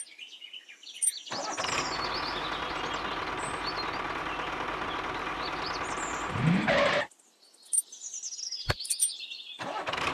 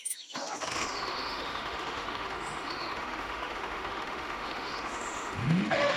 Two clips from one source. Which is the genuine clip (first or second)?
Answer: first